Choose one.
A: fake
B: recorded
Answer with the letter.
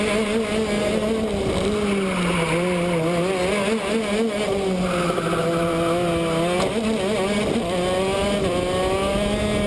B